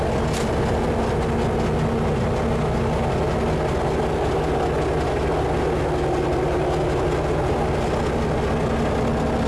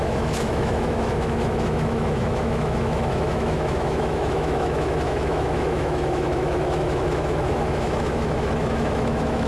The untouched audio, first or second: first